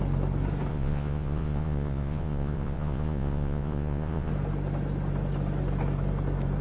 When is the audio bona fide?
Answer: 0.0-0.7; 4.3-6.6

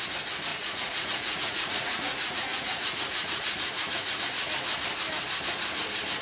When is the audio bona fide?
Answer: 0.0-0.5; 4.2-6.2

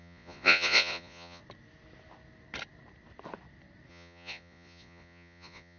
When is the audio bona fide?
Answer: 1.4-3.9

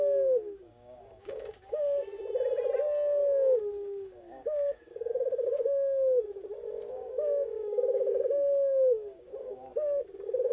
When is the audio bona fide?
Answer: 2.2-3.6; 5.1-6.9; 9.7-10.5

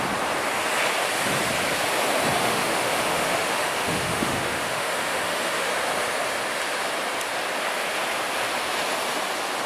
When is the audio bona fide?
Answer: 0.0-2.4; 5.7-9.7

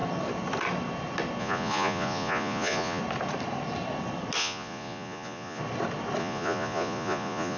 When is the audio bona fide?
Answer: 0.0-1.4; 3.0-4.4; 5.6-6.2

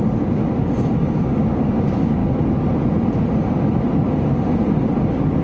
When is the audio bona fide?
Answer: 0.4-1.0; 2.2-5.4